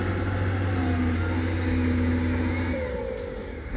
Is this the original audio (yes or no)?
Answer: yes